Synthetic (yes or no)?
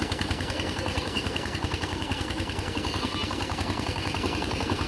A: yes